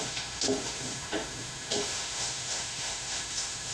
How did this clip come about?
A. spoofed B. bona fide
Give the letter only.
A